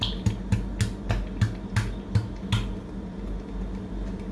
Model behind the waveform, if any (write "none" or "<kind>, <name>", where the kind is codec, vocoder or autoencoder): none